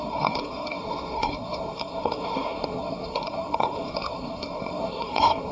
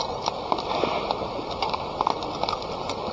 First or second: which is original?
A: second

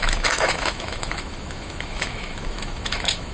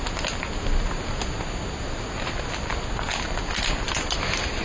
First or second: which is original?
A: second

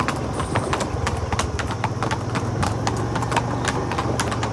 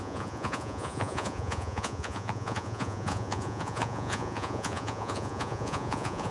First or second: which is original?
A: first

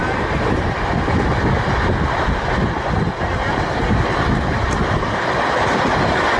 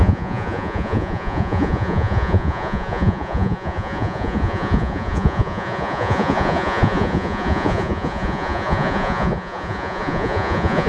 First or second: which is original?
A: first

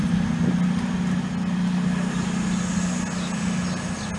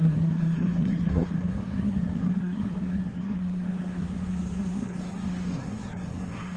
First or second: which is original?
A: first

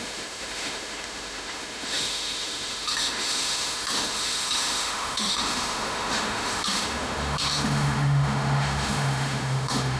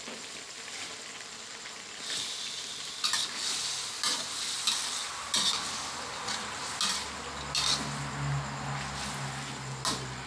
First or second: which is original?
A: second